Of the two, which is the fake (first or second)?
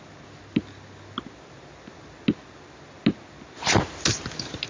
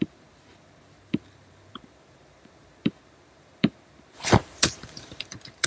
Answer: second